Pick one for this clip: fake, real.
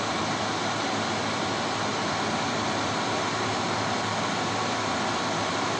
real